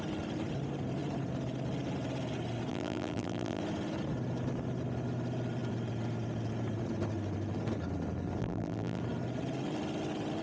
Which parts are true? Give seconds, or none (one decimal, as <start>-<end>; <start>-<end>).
0.0-2.7; 3.6-8.4; 9.0-10.4

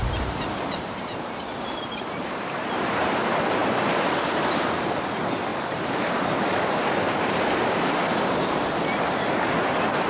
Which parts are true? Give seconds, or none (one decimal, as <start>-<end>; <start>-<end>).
3.0-3.6; 4.4-5.5; 7.6-10.1